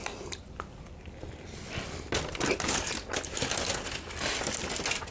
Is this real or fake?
real